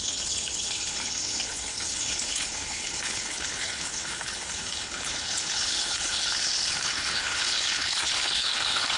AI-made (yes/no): yes